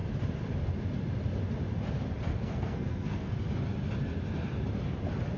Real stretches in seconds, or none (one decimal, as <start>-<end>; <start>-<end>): 0.0-2.3; 3.4-5.4